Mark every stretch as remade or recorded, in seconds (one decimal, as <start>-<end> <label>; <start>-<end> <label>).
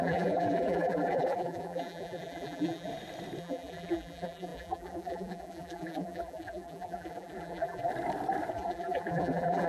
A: 0.0-2.9 remade; 2.9-3.4 recorded; 3.4-7.9 remade; 7.9-8.5 recorded; 8.5-9.7 remade